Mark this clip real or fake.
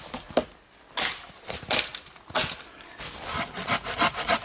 real